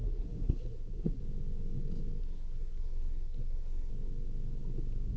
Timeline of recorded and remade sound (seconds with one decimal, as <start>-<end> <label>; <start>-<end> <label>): 0.0-1.2 remade; 1.2-2.2 recorded; 2.2-3.9 remade; 3.9-5.2 recorded